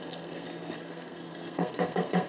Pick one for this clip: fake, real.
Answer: fake